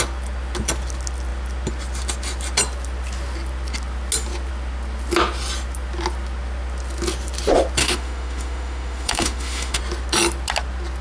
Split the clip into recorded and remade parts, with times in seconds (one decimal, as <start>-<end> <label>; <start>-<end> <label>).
0.0-7.8 recorded; 7.8-9.8 remade; 9.8-11.0 recorded

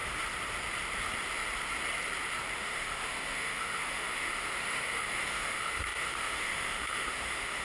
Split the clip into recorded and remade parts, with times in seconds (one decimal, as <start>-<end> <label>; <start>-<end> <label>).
0.0-2.5 recorded; 2.5-7.6 remade